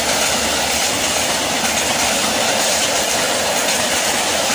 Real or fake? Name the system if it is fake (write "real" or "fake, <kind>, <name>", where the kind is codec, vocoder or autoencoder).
real